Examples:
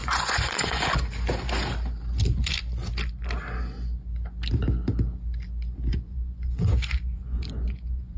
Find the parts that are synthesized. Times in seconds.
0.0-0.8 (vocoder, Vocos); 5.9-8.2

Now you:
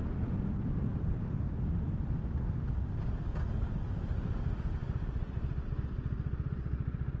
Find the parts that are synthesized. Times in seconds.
0.9-1.7 (vocoder, BigVGAN v2)

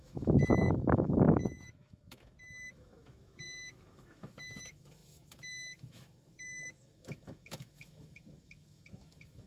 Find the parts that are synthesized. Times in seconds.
0.0-9.5 (autoencoder, DAC-VAE)

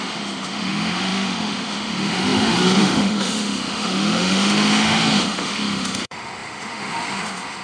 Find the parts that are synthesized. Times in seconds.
0.0-7.6 (autoencoder, DAC-VAE)